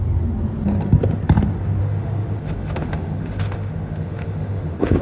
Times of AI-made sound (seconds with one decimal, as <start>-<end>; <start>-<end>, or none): 1.8-5.0